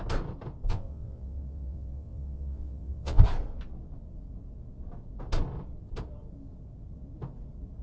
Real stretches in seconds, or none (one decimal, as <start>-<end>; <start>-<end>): 0.0-0.7; 3.2-7.8